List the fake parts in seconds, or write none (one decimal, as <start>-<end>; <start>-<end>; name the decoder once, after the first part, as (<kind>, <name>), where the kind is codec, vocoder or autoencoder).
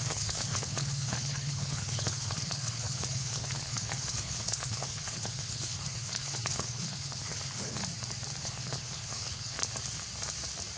0.0-7.8 (codec, HILCodec); 8.4-9.6